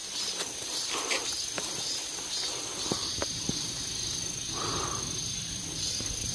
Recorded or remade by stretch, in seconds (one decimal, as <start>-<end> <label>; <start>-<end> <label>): 0.0-6.3 recorded